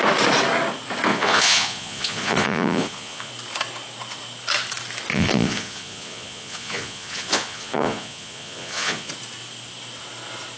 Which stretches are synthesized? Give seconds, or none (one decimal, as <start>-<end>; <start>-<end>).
1.1-3.3; 5.1-9.1